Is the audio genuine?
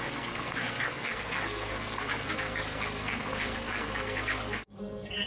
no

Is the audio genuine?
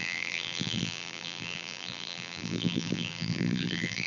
no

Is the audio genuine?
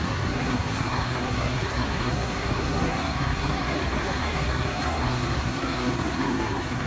no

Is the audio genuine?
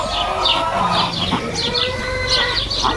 yes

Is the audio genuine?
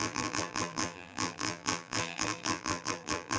no